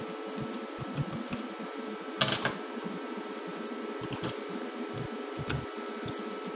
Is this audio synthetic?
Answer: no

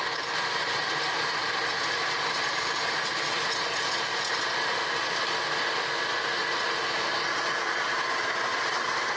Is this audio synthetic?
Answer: no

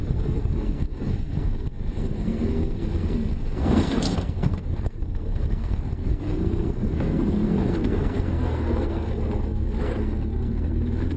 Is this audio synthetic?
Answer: yes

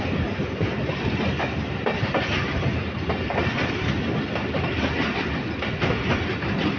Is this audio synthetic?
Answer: no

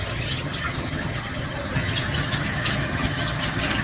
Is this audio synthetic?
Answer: yes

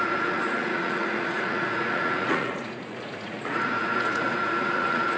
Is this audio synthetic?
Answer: yes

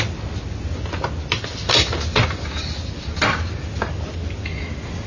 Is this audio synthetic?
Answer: no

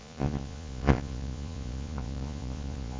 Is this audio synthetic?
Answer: yes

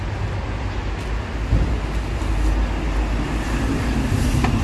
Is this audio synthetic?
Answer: no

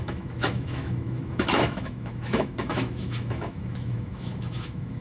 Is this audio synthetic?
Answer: yes